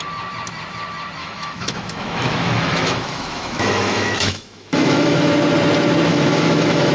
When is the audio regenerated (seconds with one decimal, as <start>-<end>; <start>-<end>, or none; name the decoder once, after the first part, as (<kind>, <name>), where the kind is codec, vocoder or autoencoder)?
1.2-5.3 (autoencoder, DAC-VAE); 6.1-6.9